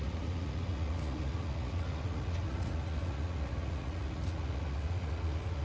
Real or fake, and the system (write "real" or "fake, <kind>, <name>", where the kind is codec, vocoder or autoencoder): fake, vocoder, Vocos